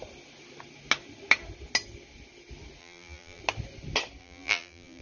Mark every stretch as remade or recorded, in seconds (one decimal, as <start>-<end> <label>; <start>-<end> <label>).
0.0-2.8 recorded; 2.8-3.4 remade; 3.4-4.2 recorded; 4.2-5.0 remade